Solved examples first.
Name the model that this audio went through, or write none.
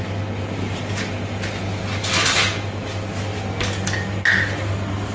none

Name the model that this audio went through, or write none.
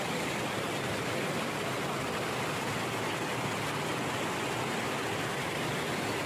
none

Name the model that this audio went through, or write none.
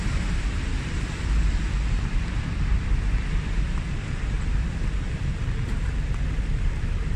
vocoder, BigVGAN v2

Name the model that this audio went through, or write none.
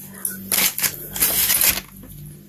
none